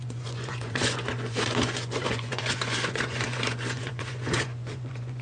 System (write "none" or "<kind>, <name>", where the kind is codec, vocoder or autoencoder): vocoder, Vocos